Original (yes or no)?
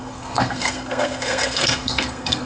no